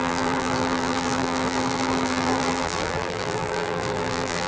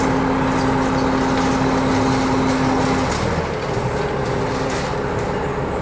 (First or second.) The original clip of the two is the second